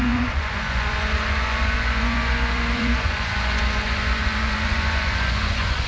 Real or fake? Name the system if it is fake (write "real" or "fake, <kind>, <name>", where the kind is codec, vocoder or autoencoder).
fake, vocoder, Vocos